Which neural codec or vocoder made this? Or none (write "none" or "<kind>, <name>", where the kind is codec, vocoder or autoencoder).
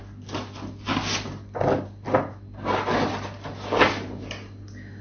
none